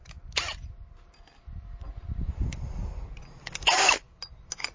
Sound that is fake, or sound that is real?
real